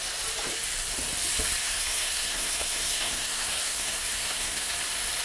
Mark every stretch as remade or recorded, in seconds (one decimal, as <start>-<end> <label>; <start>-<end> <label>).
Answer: 0.0-1.6 recorded; 1.6-4.7 remade; 4.7-5.2 recorded